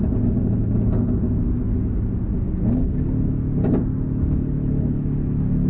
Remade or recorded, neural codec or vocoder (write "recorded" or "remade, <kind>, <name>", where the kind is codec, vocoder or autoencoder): recorded